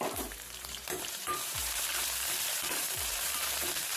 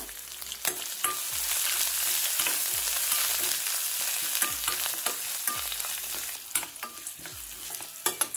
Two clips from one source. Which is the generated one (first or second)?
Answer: first